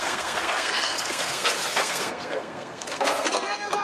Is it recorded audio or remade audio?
remade